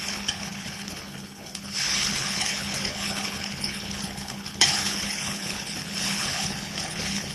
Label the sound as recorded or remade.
remade